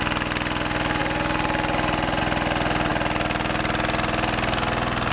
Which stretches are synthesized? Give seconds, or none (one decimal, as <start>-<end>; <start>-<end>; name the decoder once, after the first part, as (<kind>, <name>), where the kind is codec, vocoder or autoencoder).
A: none